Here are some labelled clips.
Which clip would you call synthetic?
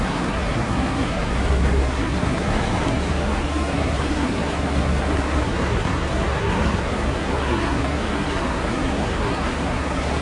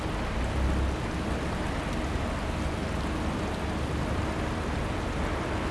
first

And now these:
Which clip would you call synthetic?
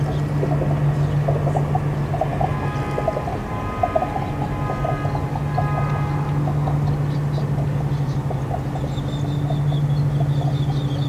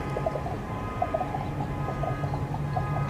second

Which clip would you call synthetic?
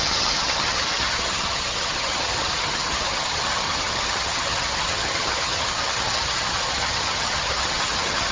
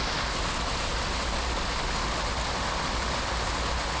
first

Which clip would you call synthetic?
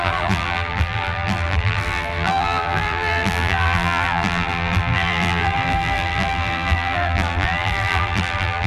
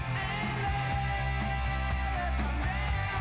first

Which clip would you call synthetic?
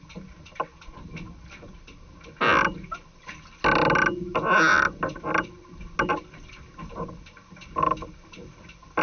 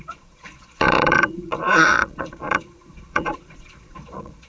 second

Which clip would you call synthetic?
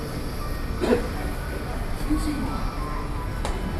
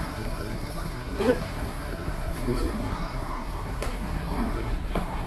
second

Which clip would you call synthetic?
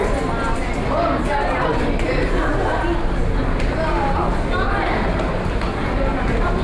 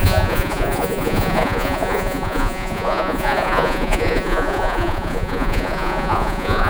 second